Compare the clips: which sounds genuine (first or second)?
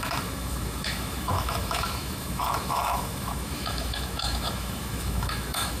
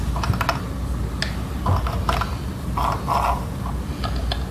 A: second